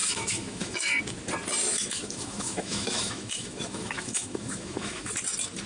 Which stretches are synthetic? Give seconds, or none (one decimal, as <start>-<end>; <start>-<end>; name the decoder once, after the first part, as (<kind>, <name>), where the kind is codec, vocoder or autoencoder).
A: 0.0-1.0 (autoencoder, DAC-VAE); 1.7-5.1